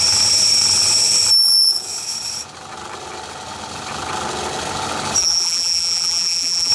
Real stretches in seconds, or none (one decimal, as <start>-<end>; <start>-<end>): 0.0-5.2